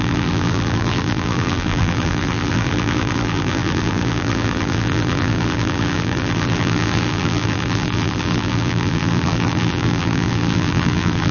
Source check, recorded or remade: remade